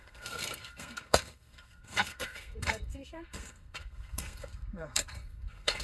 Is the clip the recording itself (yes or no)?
no